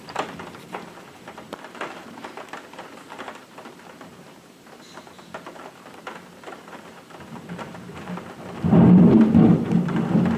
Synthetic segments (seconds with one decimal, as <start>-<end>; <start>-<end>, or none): 0.0-10.4